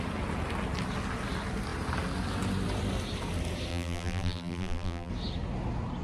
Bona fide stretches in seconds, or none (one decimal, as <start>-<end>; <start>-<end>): 0.0-3.7; 5.1-6.0